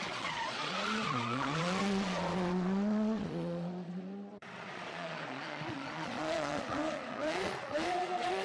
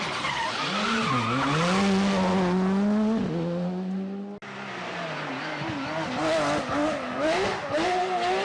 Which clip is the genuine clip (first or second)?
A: second